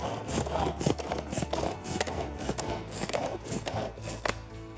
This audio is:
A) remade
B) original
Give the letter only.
A